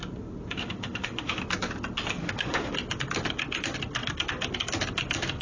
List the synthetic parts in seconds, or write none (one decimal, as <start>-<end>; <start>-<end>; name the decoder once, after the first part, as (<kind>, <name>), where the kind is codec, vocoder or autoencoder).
0.6-1.4 (autoencoder, DAC-VAE); 2.2-2.7